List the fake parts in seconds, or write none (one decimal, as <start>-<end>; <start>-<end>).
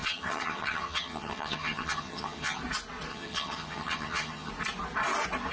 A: 0.0-2.6; 3.1-4.5